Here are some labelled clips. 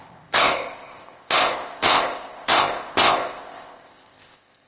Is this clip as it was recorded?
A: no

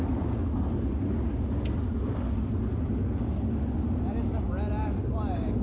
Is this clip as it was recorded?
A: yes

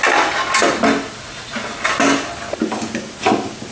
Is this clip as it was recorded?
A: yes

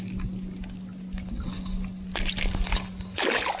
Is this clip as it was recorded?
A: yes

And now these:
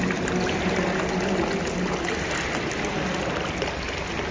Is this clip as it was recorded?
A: yes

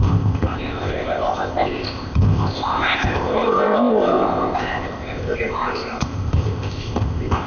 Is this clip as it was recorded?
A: no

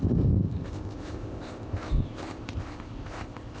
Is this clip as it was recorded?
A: no